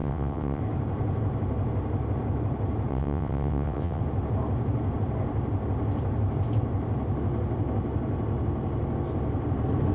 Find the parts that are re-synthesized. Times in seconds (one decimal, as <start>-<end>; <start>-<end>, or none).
0.0-0.6; 2.9-4.0